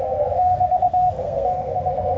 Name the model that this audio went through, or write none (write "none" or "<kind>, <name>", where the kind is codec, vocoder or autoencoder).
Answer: codec, SNAC